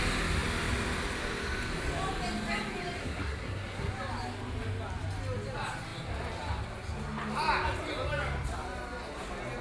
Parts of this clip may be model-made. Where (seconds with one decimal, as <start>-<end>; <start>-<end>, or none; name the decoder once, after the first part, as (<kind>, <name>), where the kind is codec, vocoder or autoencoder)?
3.0-3.9 (codec, SNAC)

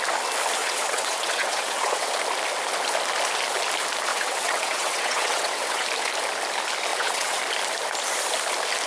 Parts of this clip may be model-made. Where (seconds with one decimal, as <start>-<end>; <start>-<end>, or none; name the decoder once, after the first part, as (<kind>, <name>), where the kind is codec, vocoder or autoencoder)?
0.6-2.1 (vocoder, WaveNeXt); 4.1-5.8; 6.9-7.4

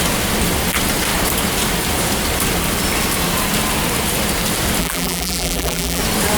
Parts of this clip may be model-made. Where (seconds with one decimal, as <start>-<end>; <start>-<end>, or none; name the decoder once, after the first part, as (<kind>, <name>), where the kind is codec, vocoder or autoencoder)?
4.8-6.0 (vocoder, BigVGAN v2)

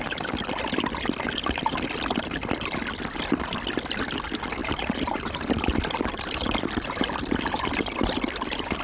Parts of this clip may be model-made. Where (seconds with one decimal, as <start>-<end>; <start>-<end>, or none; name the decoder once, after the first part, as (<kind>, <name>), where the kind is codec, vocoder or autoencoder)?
4.6-8.1 (vocoder, BigVGAN v2)

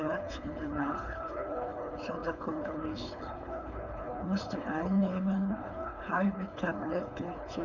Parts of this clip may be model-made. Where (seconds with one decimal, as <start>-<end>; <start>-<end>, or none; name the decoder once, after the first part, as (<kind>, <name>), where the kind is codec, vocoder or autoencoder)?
0.0-7.6 (codec, HILCodec)

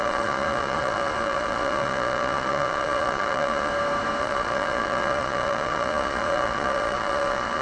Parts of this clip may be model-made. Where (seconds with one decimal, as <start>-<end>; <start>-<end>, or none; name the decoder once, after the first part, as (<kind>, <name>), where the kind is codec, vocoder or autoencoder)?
0.0-3.7 (vocoder, Vocos); 4.2-7.6

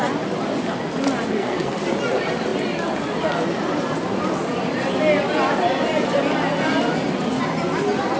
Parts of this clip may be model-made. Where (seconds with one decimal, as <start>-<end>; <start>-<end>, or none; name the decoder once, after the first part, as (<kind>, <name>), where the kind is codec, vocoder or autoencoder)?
1.3-1.8 (codec, SNAC)